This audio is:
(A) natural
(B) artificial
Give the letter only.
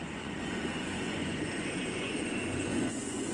B